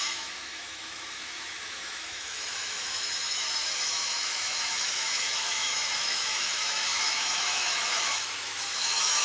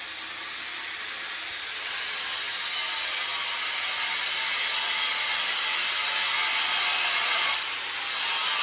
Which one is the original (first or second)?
second